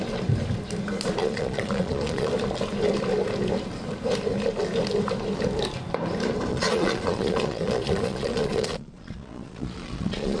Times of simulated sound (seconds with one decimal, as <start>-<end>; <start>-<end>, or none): 1.2-2.3; 6.5-10.4